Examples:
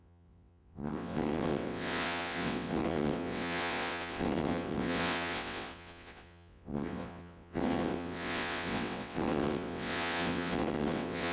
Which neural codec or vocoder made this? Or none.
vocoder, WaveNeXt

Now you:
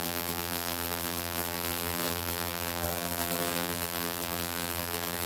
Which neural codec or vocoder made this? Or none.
vocoder, BigVGAN v2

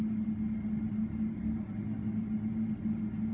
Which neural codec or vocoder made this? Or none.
none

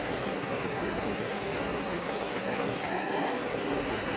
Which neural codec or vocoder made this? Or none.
codec, SNAC